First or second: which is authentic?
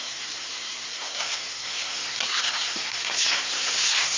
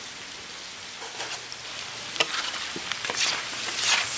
second